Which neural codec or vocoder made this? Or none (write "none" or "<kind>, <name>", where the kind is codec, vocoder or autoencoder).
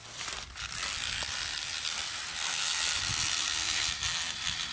none